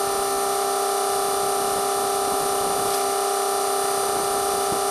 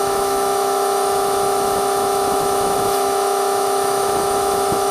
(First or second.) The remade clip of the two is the second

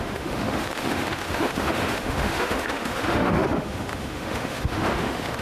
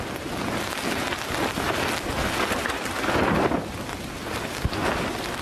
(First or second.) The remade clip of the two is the first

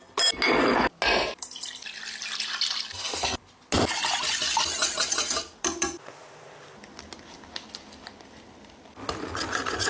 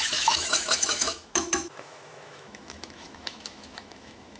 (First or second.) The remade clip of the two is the second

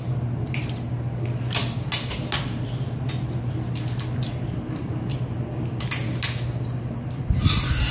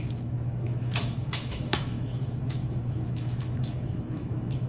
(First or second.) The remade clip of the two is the second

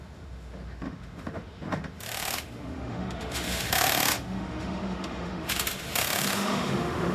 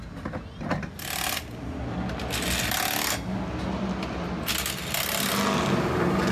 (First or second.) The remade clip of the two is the first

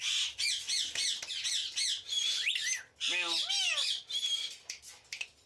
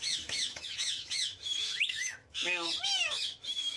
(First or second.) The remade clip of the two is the second